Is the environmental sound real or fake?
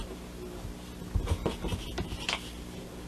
real